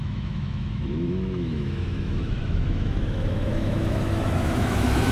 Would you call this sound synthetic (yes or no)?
yes